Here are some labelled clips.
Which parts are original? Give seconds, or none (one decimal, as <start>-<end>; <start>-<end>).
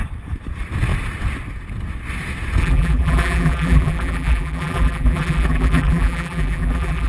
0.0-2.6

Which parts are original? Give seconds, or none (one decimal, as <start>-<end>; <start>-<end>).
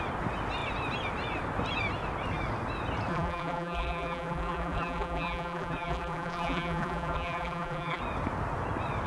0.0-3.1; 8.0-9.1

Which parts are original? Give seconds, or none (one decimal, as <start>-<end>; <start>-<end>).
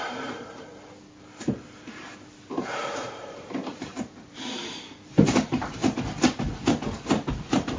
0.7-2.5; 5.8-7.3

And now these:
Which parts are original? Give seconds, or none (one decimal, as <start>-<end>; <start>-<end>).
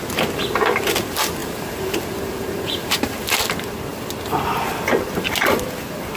0.0-1.4; 3.1-6.2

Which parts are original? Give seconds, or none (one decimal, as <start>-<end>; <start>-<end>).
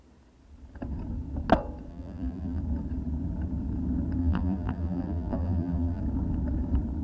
0.0-1.9; 2.6-4.2; 6.0-7.0